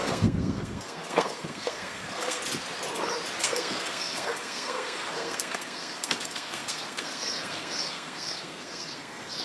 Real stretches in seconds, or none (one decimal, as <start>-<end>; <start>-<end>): 2.4-3.4